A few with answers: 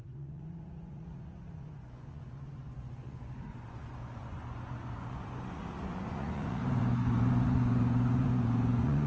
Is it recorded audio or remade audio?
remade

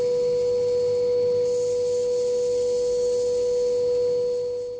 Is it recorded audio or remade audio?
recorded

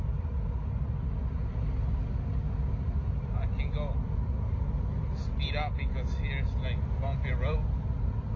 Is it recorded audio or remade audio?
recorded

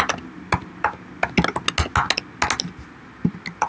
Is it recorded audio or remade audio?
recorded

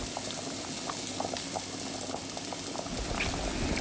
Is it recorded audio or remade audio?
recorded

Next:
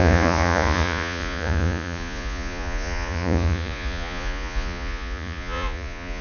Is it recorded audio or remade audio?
remade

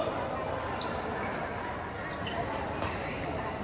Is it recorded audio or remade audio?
recorded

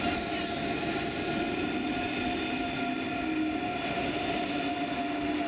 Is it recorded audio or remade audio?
recorded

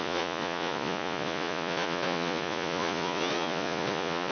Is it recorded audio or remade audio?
remade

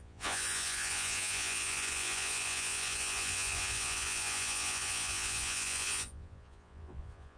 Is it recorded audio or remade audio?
remade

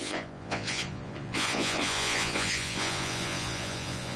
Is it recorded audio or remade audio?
remade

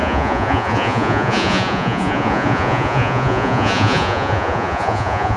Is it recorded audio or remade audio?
remade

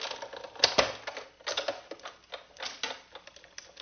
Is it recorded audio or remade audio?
recorded